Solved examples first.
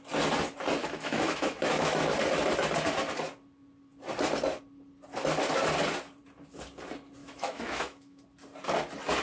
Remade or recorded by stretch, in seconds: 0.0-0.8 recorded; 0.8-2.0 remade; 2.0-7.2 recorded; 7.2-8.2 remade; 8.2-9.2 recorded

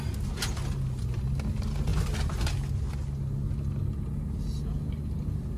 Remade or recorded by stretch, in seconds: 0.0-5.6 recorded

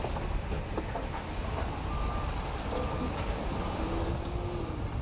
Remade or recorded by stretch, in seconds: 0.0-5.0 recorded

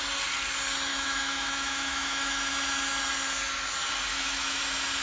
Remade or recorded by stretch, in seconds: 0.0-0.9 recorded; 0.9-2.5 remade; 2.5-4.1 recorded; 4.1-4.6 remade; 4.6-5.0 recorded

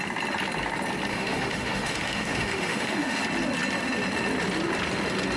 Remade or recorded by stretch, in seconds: 0.0-1.1 recorded; 1.1-3.2 remade; 3.2-5.4 recorded

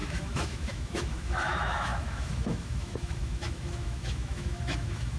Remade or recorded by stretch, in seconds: 0.0-5.2 remade

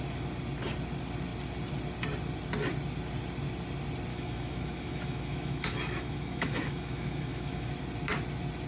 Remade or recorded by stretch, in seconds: 0.0-4.1 recorded; 4.1-7.7 remade; 7.7-8.7 recorded